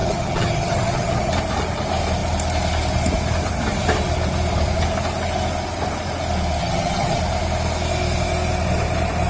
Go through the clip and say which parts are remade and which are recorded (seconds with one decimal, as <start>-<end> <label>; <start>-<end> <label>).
0.0-1.3 remade; 1.3-6.6 recorded; 6.6-7.2 remade; 7.2-9.3 recorded